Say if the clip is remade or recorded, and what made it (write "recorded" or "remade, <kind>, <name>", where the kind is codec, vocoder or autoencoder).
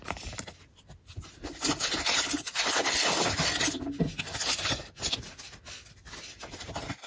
recorded